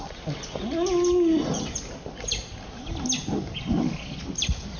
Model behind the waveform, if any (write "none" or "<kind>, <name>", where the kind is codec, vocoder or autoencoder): none